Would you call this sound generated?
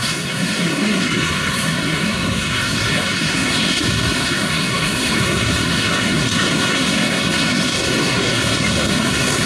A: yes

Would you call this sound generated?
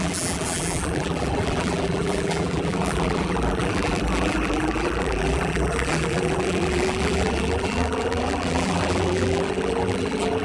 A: yes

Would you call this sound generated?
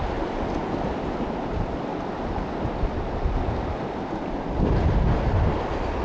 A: no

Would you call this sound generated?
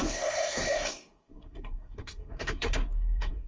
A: yes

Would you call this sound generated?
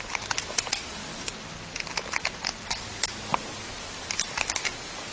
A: no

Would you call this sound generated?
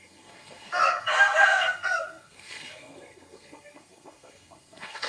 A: yes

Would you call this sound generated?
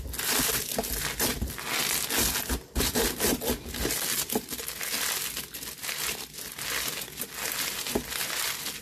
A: no